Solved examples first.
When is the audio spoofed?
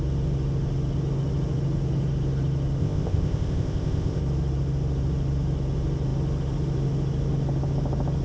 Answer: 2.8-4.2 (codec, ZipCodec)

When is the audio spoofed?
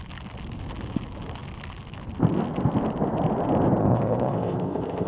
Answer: 3.8-5.1 (codec, ZipCodec)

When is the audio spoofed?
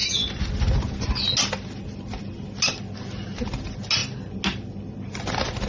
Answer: none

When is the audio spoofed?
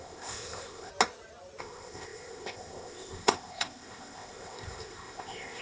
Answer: 0.0-0.9 (codec, ZipCodec); 1.6-5.6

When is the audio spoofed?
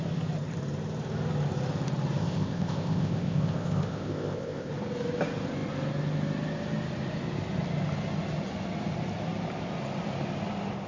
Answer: 2.2-4.7 (codec, ZipCodec)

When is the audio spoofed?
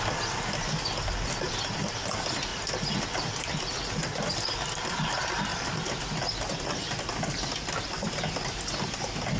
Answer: none